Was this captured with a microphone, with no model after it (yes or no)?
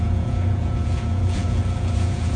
no